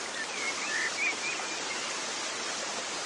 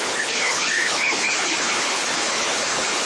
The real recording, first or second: first